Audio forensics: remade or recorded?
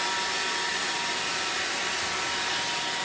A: recorded